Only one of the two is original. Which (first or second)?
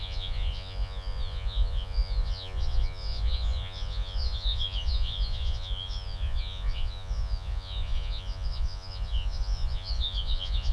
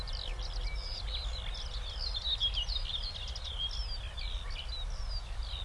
second